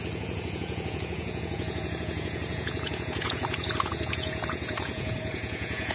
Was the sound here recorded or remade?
remade